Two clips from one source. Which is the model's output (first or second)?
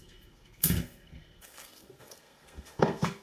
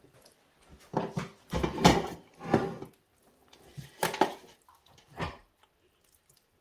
first